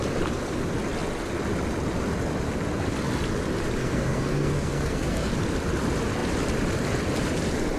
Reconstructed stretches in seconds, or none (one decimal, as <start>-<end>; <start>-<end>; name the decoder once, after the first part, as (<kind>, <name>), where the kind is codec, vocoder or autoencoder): 3.8-5.3 (codec, SNAC)